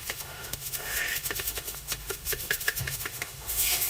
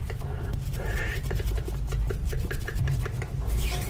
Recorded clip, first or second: second